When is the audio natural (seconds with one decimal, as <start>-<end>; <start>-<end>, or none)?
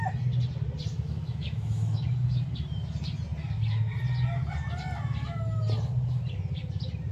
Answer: 0.0-0.9; 2.4-7.1